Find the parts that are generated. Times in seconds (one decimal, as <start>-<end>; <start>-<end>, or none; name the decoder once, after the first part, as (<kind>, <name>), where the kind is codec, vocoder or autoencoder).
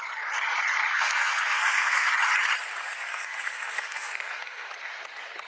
0.9-2.1 (codec, SNAC); 3.1-4.7